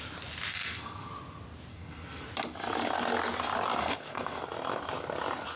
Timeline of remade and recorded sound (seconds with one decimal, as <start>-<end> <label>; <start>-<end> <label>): 0.0-0.5 recorded; 0.5-1.1 remade; 1.1-1.7 recorded; 1.7-2.2 remade; 2.2-3.8 recorded; 3.8-4.4 remade; 4.4-5.6 recorded